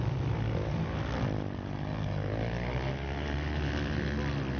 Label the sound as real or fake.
real